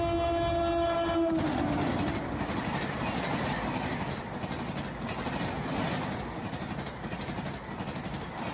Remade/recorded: recorded